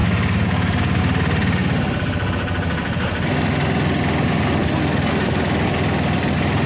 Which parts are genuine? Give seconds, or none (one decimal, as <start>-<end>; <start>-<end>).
1.0-6.7